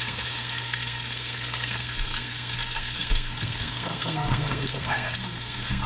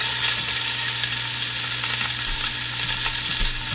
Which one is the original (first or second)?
second